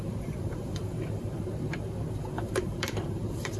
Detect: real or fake fake